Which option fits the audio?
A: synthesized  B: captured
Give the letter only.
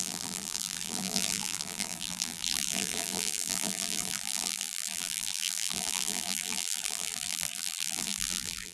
A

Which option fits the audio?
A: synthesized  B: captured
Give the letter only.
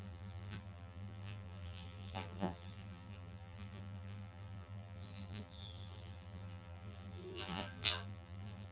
A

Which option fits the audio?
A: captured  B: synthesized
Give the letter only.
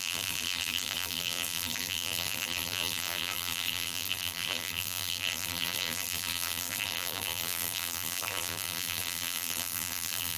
B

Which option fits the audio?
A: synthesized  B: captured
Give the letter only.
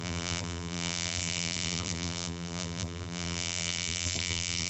A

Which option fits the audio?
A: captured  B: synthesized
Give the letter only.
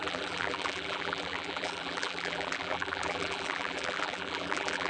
B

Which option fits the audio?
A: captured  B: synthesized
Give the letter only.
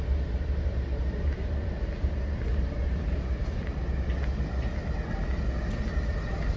A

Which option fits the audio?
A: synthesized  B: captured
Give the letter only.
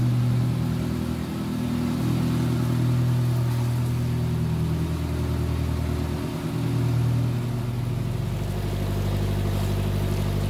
B